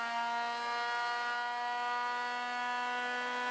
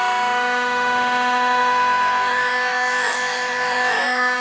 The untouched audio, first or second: first